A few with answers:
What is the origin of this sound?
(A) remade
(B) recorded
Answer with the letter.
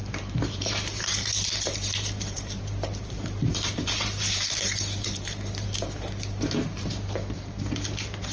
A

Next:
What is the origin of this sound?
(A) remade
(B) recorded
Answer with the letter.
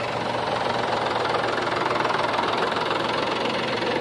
A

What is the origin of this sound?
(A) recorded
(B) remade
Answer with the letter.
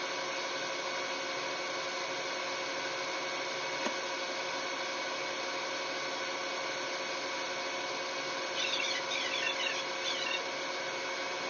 A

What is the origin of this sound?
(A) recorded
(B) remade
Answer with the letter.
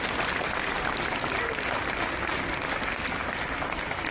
A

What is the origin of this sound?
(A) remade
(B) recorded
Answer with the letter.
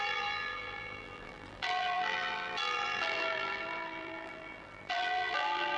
A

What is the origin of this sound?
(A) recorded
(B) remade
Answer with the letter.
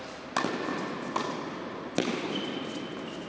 A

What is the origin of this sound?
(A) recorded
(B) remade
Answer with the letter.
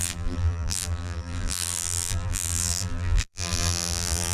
B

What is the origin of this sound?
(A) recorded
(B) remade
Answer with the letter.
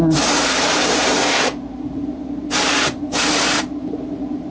B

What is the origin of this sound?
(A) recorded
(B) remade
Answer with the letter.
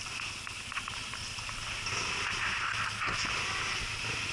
A